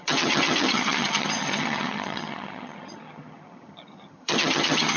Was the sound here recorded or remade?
remade